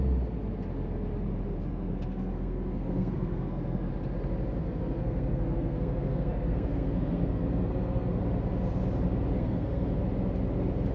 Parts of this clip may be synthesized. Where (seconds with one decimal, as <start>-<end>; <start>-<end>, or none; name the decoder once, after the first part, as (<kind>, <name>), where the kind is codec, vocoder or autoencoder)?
1.7-3.9 (codec, SNAC); 4.6-8.2; 9.3-9.9